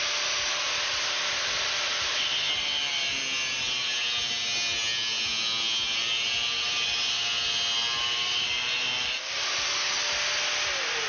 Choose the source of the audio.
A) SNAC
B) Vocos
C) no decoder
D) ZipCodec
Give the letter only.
C